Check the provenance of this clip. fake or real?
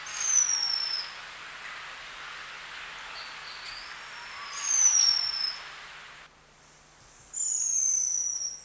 real